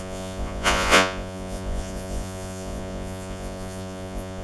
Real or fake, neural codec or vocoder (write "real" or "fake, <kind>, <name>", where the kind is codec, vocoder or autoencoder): fake, vocoder, Vocos